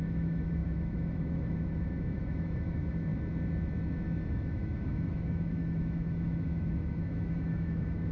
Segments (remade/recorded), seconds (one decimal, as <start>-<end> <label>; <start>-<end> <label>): 0.0-3.1 remade; 3.1-4.3 recorded; 4.3-8.1 remade